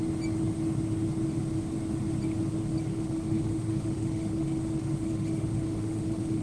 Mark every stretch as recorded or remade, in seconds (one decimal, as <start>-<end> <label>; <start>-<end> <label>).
0.0-2.9 recorded; 2.9-6.4 remade